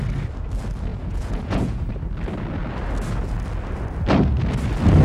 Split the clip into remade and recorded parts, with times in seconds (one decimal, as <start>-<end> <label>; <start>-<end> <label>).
0.0-0.9 recorded; 0.9-1.8 remade; 1.8-5.0 recorded